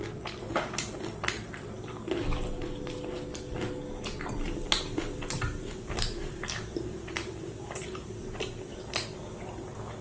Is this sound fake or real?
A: real